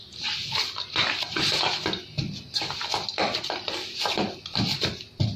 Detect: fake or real real